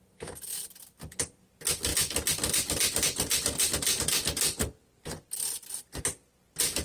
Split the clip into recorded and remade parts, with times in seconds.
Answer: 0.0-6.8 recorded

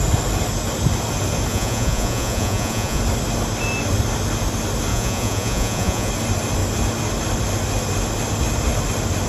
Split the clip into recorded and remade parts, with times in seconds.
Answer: 0.0-1.5 recorded; 1.5-3.0 remade; 3.0-4.9 recorded; 4.9-6.1 remade; 6.1-9.3 recorded

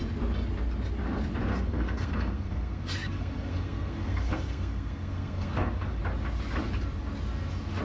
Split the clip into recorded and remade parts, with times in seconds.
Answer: 0.0-1.5 recorded; 1.5-6.0 remade; 6.0-7.8 recorded

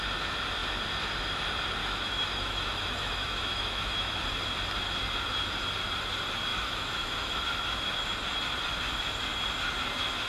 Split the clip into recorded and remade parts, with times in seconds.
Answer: 0.0-1.8 recorded; 1.8-4.2 remade; 4.2-6.5 recorded; 6.5-7.4 remade; 7.4-10.3 recorded

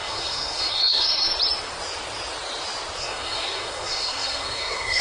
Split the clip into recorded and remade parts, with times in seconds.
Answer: 0.0-1.3 remade; 1.3-3.0 recorded; 3.0-5.0 remade

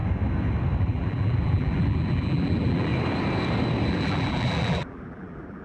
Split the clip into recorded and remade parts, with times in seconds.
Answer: 0.0-0.8 recorded; 0.8-2.9 remade; 2.9-3.9 recorded; 3.9-5.6 remade

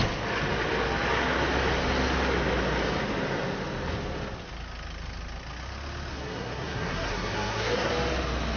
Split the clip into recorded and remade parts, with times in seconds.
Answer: 0.0-6.1 recorded; 6.1-7.9 remade; 7.9-8.6 recorded